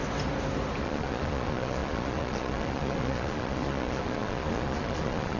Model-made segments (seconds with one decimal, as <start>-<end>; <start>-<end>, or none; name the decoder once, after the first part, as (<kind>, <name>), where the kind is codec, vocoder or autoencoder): 0.8-5.4 (vocoder, Vocos)